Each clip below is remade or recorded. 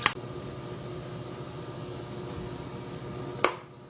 recorded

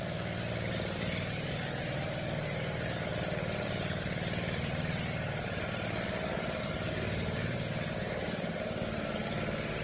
remade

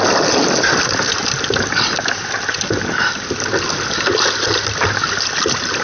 recorded